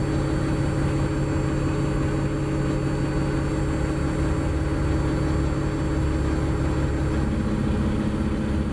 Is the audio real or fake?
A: real